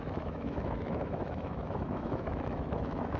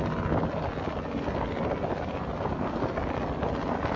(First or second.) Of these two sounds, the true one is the second